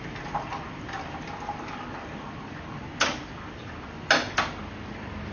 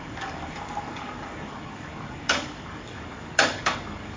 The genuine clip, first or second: first